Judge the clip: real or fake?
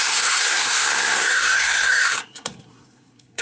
fake